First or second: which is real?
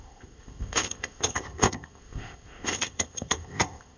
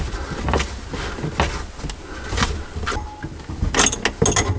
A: second